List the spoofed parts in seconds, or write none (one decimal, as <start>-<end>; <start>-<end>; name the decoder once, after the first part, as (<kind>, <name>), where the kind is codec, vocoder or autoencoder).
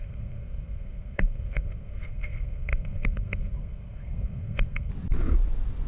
0.0-4.9 (codec, SNAC)